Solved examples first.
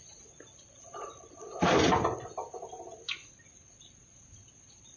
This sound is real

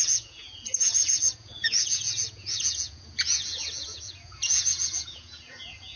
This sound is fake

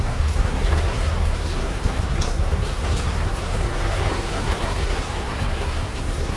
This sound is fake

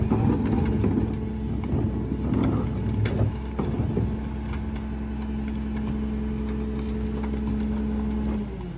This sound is real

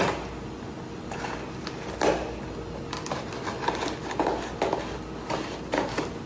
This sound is real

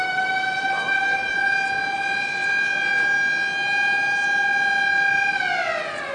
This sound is real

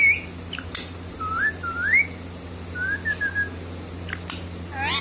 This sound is real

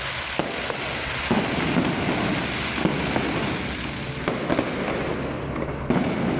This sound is real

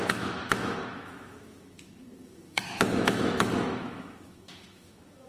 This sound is fake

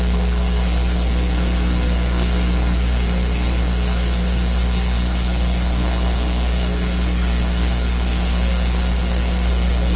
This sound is fake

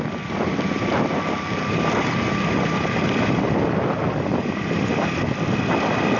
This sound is real